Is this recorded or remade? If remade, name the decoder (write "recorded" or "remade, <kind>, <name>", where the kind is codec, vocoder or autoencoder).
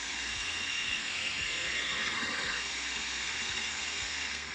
remade, codec, SNAC